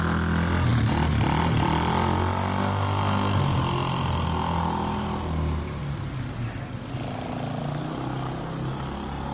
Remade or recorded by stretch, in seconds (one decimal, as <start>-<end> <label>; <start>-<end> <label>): 0.0-9.3 recorded